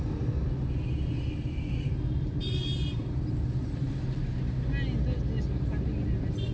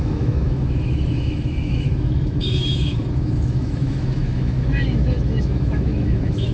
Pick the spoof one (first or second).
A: second